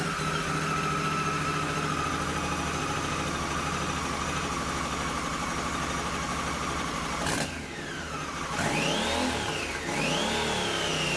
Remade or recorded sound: recorded